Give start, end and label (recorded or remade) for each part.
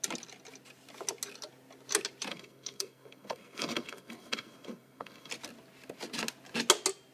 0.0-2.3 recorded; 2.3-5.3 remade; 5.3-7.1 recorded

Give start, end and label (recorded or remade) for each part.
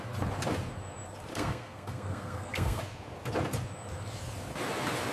0.0-1.3 recorded; 1.3-2.8 remade; 2.8-5.1 recorded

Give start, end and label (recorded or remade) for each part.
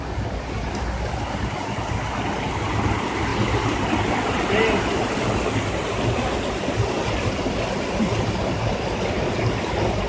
0.0-10.1 recorded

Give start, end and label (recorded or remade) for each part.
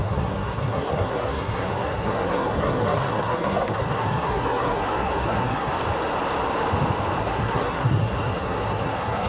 0.0-5.7 remade; 5.7-7.2 recorded; 7.2-9.3 remade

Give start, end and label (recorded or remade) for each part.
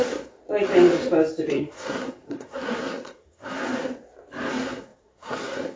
0.0-0.4 remade; 0.4-1.5 recorded; 1.5-3.6 remade; 3.6-4.5 recorded; 4.5-5.8 remade